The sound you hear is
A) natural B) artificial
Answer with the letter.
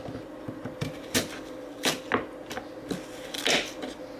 A